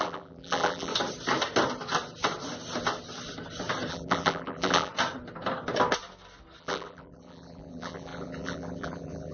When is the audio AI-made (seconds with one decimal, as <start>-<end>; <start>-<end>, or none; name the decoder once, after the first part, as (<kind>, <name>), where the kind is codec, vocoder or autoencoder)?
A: 0.0-0.9 (vocoder, BigVGAN v2); 3.9-4.9; 6.6-9.3